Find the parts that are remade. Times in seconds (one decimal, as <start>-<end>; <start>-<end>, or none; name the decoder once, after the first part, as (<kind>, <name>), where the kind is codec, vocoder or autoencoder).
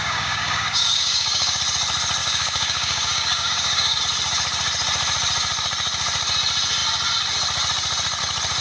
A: 0.0-1.6 (codec, DAC); 2.2-4.0